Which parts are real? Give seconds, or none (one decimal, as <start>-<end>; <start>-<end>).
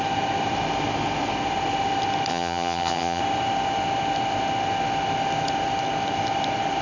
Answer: 0.0-2.3; 3.2-6.8